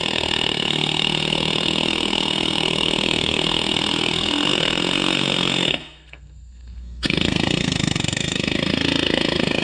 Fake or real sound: fake